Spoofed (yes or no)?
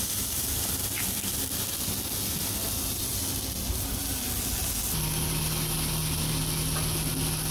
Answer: no